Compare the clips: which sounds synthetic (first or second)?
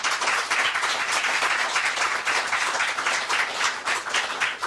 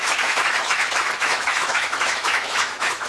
second